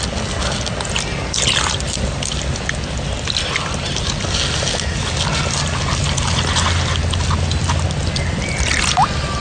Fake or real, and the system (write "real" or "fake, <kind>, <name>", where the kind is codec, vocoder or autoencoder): real